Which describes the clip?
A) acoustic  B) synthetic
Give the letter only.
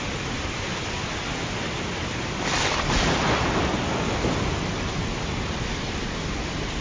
A